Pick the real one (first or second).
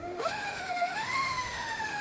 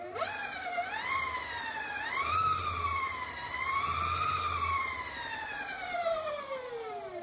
second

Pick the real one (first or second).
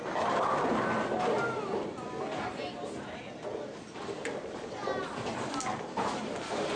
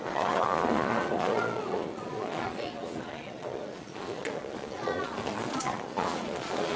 first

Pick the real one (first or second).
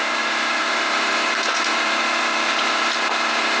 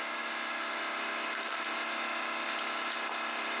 second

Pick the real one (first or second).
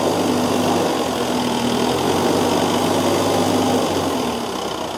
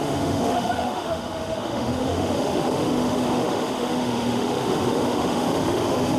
first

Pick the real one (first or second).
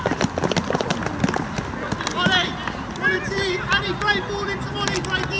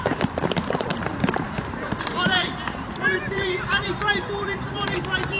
first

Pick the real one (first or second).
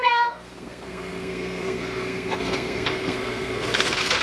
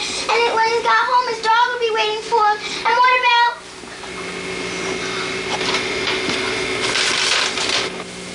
second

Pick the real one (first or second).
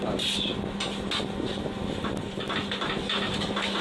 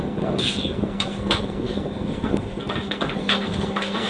first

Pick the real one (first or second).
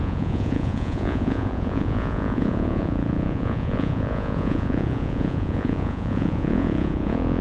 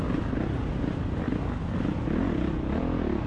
second